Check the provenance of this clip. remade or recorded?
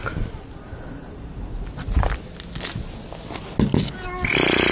recorded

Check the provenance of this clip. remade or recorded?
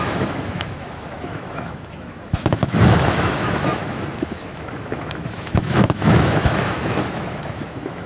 remade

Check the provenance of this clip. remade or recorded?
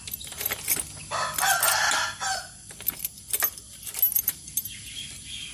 recorded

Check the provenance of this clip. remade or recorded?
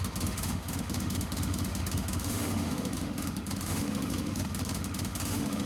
remade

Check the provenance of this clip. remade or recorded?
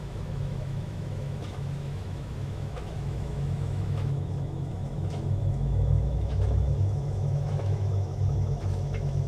remade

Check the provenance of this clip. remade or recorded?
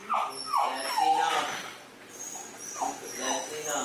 recorded